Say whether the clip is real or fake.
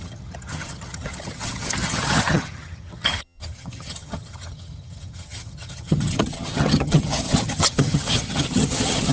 fake